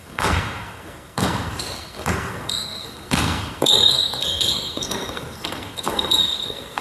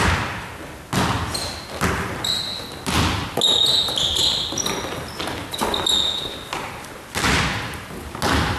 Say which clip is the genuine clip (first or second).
second